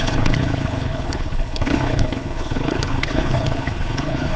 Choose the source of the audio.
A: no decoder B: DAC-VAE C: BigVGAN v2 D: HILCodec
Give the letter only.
D